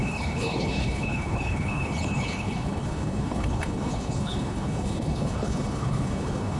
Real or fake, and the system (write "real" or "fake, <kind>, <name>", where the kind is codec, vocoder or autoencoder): fake, codec, HILCodec